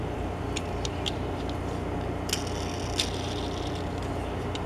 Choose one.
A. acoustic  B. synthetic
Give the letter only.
A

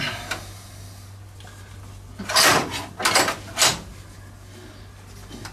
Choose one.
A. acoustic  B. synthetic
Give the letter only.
A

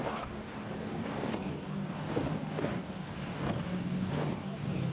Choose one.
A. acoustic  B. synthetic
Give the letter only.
B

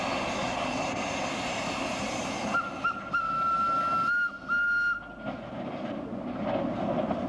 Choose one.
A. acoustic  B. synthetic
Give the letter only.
A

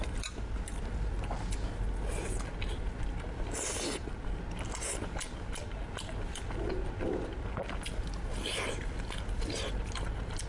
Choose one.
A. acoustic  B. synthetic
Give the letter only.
A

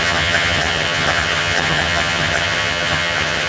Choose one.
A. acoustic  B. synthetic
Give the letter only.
B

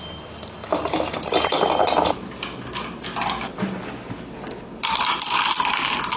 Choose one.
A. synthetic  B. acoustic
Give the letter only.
B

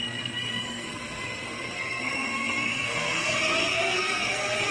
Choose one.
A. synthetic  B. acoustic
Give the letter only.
A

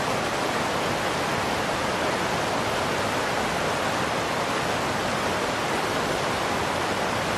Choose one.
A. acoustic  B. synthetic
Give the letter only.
A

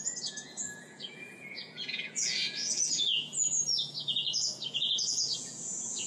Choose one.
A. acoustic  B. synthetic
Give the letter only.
B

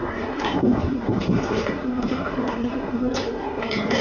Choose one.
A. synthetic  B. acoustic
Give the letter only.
A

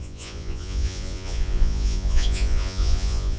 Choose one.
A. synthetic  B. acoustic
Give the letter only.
A